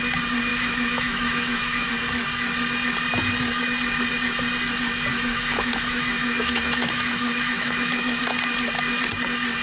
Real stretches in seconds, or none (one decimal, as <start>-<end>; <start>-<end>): 0.0-0.5; 1.9-5.1; 8.2-9.6